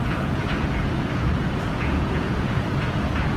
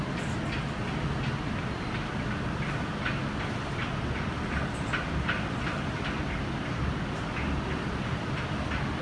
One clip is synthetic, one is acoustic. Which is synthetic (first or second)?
first